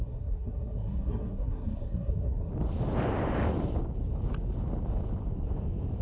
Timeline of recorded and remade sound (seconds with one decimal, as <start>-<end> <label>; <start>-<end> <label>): 0.0-2.5 remade; 2.5-6.0 recorded